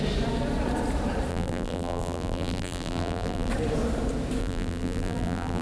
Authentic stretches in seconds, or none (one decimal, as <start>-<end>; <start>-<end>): 0.0-1.3; 3.5-4.4

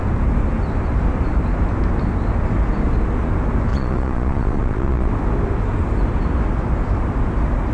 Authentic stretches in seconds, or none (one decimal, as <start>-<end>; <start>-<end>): 0.0-3.7; 5.1-7.7

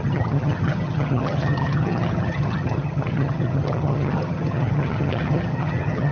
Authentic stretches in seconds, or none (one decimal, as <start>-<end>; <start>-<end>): none

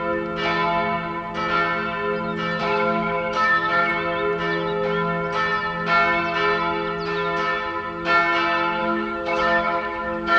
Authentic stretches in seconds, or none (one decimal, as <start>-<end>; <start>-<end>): 0.0-2.6; 3.9-8.8

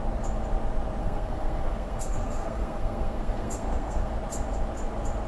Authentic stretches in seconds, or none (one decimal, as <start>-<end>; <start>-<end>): 0.0-1.0; 4.1-5.3

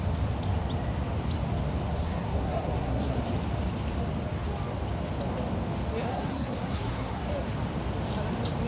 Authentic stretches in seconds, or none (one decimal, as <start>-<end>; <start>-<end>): 0.0-1.9; 3.2-6.1; 7.3-8.7

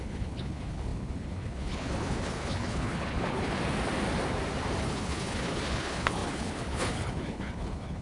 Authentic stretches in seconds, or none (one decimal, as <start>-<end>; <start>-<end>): 3.6-4.8